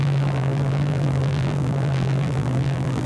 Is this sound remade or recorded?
remade